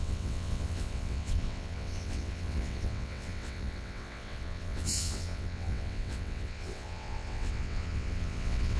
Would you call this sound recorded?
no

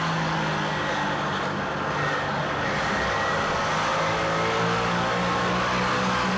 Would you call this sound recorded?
no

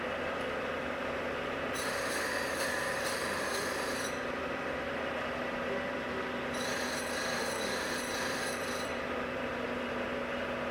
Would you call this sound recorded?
no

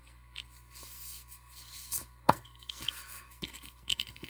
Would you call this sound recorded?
no